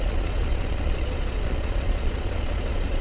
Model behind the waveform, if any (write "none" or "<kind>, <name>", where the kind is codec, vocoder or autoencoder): vocoder, Vocos